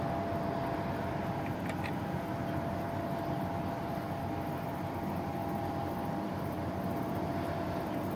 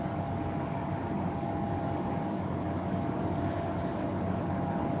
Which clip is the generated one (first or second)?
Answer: second